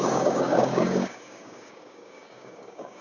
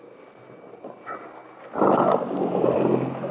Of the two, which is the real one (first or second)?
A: second